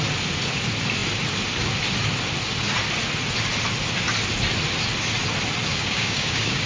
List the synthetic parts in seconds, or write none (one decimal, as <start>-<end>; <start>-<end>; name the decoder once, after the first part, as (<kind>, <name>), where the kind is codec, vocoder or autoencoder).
5.7-6.7 (codec, DAC)